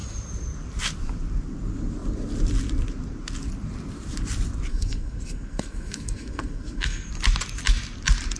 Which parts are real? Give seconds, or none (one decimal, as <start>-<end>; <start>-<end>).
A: 0.0-4.7; 7.1-8.4